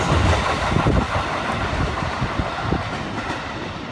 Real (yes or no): yes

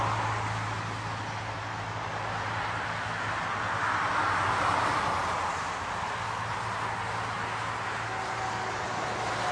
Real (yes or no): yes